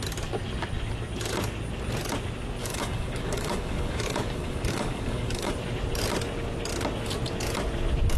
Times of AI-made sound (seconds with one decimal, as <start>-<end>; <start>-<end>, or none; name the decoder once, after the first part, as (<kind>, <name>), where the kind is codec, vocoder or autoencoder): 2.6-5.5 (codec, DAC)